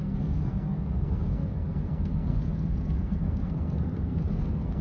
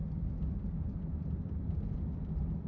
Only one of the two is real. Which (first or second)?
second